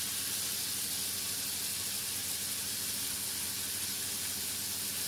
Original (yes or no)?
yes